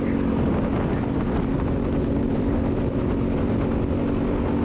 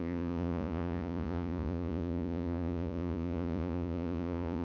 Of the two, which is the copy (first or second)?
second